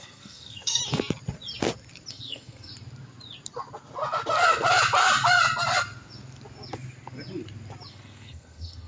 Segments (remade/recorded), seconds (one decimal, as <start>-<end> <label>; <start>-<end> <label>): 0.0-0.8 remade; 0.8-2.1 recorded; 2.1-2.7 remade; 2.7-7.9 recorded; 7.9-8.9 remade